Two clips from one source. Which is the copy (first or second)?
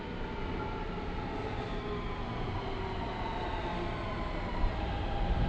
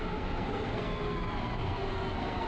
second